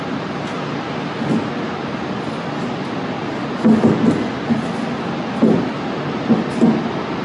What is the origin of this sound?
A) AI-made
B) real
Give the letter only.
B